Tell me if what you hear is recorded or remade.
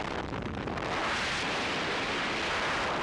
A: recorded